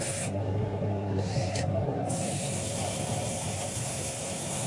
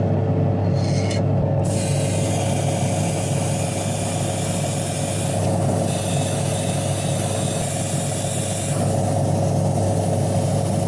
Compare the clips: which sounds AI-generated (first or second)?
first